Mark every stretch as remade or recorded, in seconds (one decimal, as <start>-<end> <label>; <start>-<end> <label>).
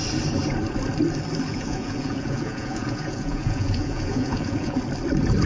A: 0.0-1.5 recorded; 1.5-4.8 remade; 4.8-5.5 recorded